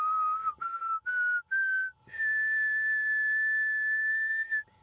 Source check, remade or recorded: recorded